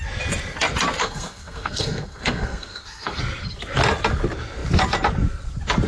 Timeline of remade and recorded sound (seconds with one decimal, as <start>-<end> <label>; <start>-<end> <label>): 0.0-1.0 recorded; 1.0-3.2 remade; 3.2-5.9 recorded